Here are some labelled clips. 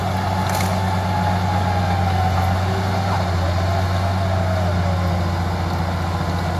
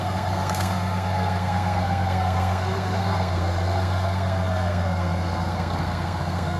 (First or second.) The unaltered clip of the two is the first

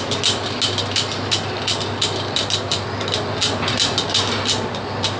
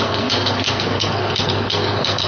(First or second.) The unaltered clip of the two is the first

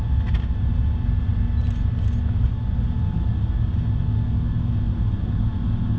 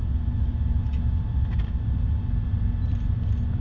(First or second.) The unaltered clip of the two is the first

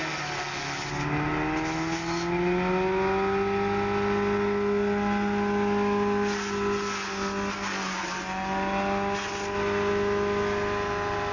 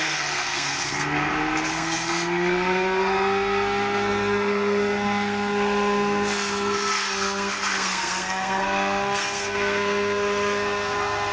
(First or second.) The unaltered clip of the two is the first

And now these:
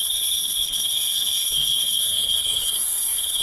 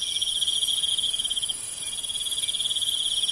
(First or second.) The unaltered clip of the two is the second